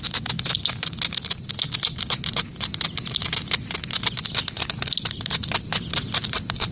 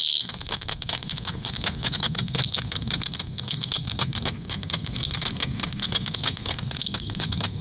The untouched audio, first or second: first